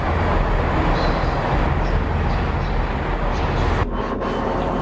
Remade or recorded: recorded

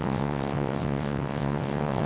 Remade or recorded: remade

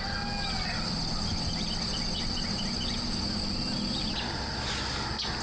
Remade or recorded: recorded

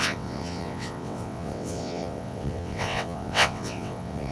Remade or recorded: remade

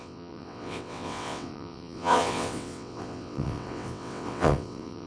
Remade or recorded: remade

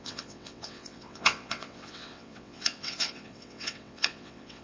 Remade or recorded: remade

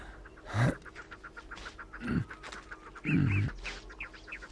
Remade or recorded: recorded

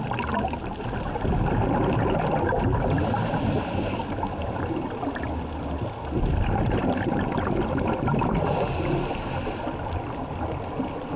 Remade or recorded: recorded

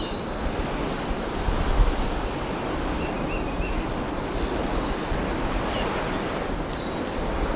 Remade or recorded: recorded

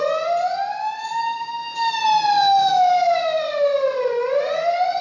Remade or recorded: recorded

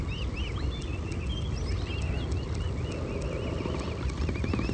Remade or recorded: recorded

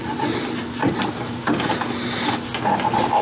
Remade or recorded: recorded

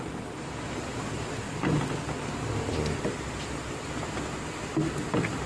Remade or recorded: recorded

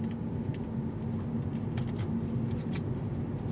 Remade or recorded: recorded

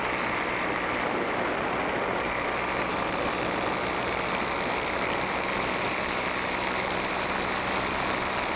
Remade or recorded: recorded